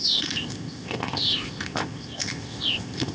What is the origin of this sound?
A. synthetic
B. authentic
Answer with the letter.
A